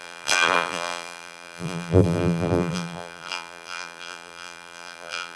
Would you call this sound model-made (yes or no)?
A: yes